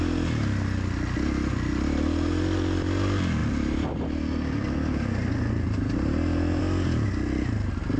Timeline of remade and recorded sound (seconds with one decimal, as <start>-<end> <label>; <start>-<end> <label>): 0.0-8.0 recorded